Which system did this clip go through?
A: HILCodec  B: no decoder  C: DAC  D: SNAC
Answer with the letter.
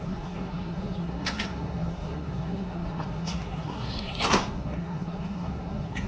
D